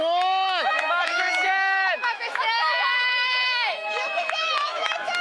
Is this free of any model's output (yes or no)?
no